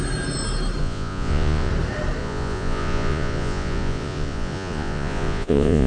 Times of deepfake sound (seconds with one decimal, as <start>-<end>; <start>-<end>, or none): 0.8-1.7; 2.2-5.9